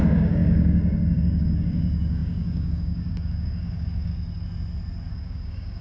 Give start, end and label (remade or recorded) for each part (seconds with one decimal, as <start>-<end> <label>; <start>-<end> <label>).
0.0-4.1 remade; 4.1-5.1 recorded; 5.1-5.8 remade